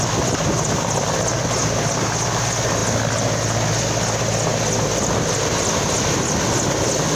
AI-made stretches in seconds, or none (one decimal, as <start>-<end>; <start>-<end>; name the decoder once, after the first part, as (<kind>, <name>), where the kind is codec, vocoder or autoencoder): none